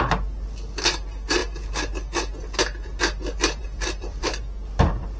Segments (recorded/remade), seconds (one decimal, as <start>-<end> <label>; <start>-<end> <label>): 0.0-3.6 recorded; 3.6-4.4 remade; 4.4-5.2 recorded